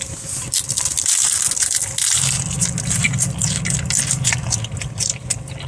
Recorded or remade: recorded